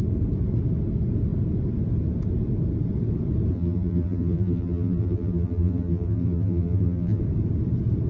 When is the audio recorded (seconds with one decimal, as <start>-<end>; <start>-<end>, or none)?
0.0-3.5; 7.2-8.1